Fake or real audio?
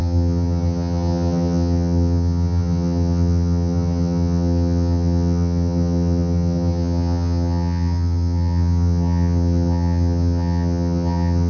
fake